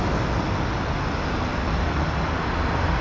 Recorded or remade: recorded